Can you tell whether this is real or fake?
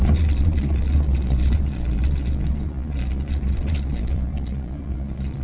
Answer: fake